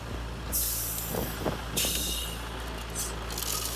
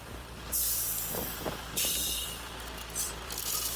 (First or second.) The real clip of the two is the first